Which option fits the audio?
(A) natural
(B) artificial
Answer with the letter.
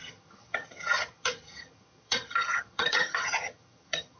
B